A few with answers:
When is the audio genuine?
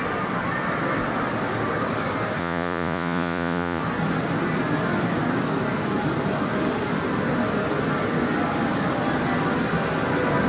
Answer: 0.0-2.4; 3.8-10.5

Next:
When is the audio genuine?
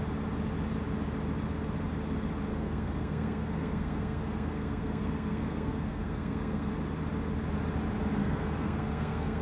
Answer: 0.0-2.5; 6.7-8.2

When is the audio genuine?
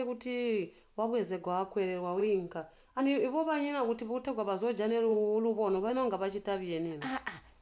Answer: 0.0-2.2; 3.0-5.1; 5.9-7.6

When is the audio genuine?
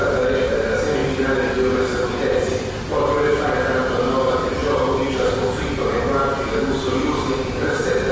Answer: 0.0-8.1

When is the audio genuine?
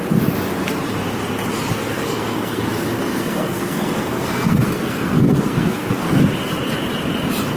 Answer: 0.0-1.7; 2.6-3.1; 6.2-7.6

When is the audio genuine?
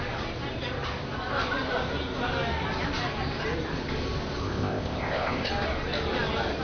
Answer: 0.0-4.4; 5.5-6.6